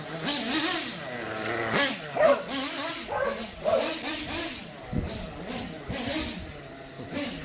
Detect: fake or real real